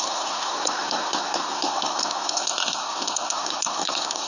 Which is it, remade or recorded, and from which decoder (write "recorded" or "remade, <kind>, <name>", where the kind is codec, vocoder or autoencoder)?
remade, codec, SNAC